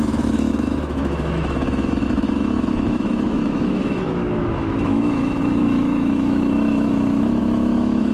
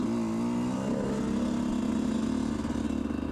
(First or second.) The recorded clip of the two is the second